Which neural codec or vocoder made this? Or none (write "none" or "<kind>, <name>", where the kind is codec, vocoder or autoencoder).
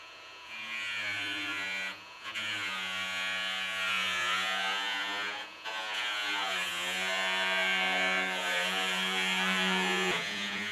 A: vocoder, Vocos